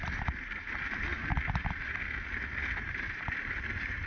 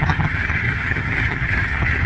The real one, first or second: first